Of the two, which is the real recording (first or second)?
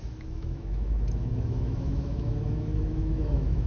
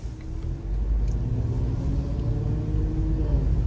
second